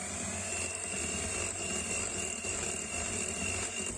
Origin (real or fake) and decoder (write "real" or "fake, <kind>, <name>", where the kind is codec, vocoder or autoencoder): real